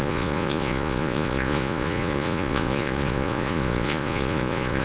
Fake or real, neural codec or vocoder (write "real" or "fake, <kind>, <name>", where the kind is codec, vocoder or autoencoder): fake, vocoder, Vocos